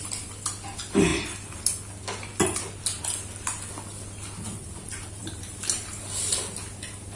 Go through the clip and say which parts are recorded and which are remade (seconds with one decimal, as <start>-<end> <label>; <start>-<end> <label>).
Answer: 0.0-5.2 recorded; 5.2-5.9 remade; 5.9-7.2 recorded